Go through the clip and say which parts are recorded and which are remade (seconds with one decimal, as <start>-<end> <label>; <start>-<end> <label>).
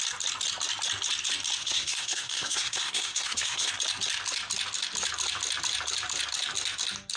0.0-1.6 recorded; 1.6-3.7 remade; 3.7-7.2 recorded